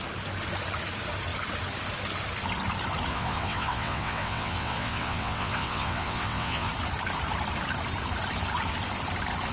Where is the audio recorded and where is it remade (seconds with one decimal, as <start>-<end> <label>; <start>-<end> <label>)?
0.0-3.1 recorded; 3.1-6.7 remade; 6.7-9.5 recorded